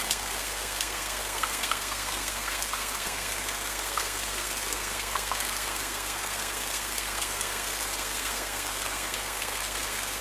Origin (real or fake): fake